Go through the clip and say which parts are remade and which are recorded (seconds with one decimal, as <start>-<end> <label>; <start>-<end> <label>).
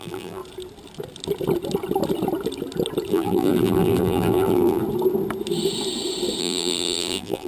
0.0-0.4 remade; 0.4-3.1 recorded; 3.1-4.8 remade; 4.8-6.4 recorded; 6.4-7.5 remade